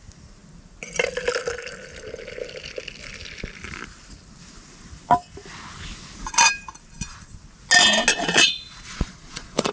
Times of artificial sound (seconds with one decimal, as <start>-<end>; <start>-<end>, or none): 8.1-9.7